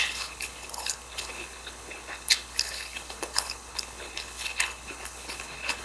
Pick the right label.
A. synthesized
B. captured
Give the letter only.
A